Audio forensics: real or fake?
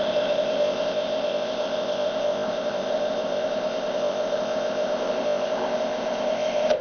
fake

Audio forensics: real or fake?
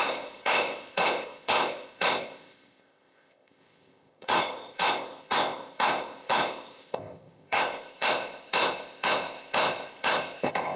fake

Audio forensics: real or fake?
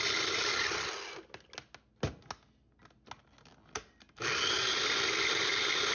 real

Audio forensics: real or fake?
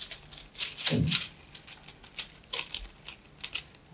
real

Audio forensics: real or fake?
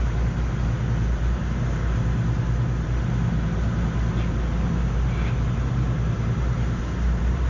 real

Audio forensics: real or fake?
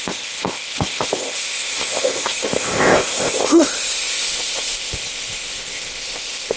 fake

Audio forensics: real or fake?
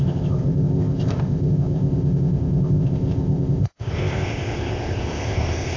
fake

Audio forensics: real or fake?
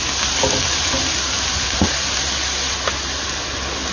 real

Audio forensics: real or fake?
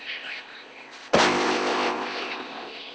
fake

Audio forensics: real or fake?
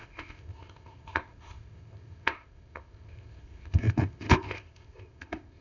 fake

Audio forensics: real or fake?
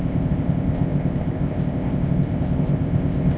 fake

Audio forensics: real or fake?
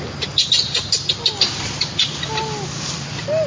real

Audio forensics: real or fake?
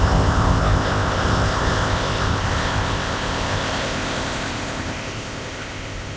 fake